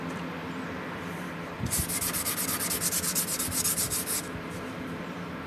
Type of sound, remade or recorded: recorded